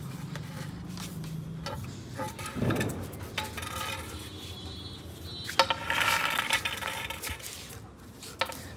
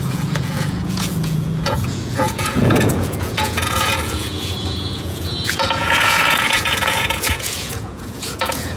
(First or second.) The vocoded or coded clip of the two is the second